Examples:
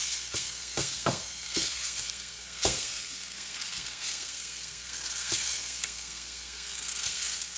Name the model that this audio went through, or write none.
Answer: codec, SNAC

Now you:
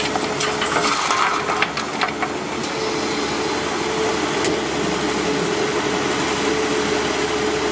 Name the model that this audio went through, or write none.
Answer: none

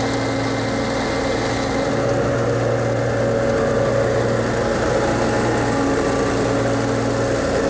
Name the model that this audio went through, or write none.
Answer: none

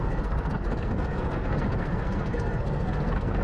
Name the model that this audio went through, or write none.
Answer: codec, SNAC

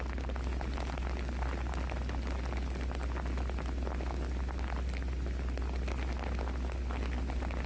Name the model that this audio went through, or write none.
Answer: none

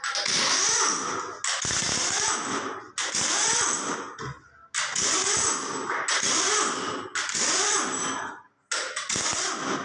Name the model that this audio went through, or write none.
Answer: none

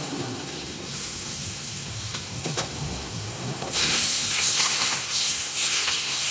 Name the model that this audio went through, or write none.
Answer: codec, SNAC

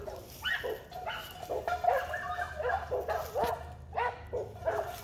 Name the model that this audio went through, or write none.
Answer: none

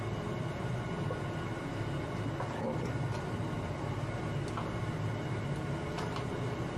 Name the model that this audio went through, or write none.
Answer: none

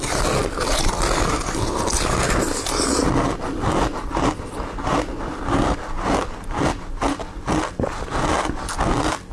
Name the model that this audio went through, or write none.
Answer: none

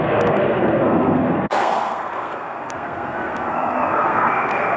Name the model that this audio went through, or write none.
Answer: codec, SNAC